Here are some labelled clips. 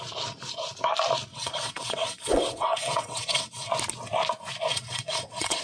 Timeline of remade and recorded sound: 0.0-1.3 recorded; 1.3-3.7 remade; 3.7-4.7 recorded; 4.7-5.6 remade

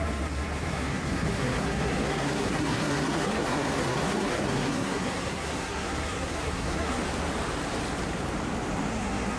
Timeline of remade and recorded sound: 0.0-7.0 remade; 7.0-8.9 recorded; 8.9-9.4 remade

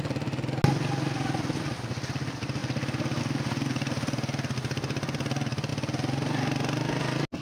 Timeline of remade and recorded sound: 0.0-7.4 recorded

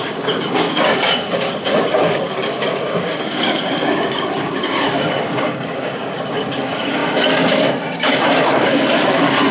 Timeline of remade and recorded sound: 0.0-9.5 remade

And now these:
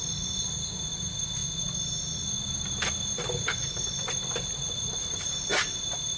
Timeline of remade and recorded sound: 0.0-6.2 recorded

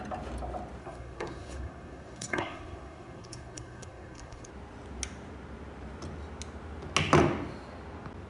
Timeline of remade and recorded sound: 0.0-0.8 recorded; 0.8-4.5 remade; 4.5-8.3 recorded